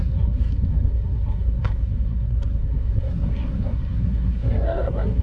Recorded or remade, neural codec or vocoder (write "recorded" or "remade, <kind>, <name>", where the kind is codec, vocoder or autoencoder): remade, codec, SNAC